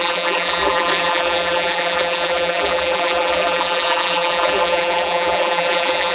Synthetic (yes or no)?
yes